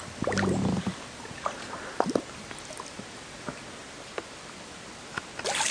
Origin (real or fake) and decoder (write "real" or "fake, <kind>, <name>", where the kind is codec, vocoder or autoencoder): real